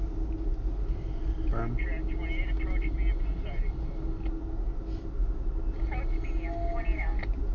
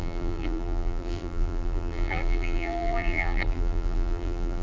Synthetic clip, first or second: second